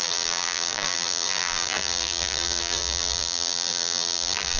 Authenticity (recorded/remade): remade